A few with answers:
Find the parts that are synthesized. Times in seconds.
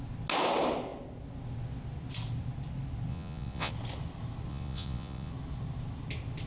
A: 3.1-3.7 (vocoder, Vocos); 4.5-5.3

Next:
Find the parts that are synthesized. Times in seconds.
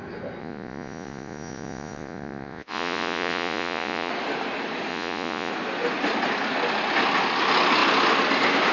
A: 0.4-4.1 (vocoder, Vocos); 4.9-5.5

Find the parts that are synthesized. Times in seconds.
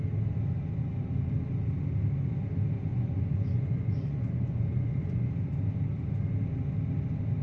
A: 2.9-5.3 (vocoder, Vocos)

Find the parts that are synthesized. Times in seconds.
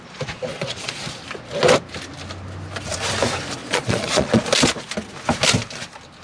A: 0.5-1.0 (vocoder, Vocos); 3.6-4.4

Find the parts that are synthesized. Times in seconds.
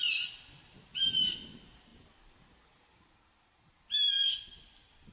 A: none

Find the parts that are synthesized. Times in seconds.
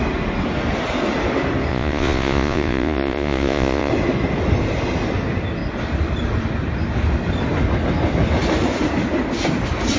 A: 1.7-3.9 (vocoder, Vocos)